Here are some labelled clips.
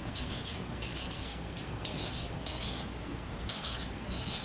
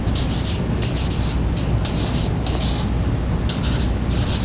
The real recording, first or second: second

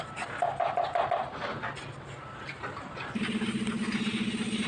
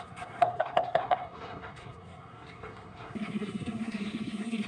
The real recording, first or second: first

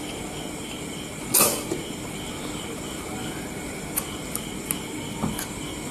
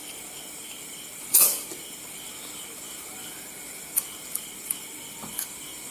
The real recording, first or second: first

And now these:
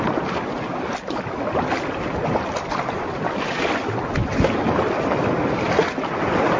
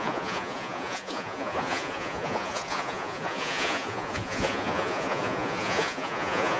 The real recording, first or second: first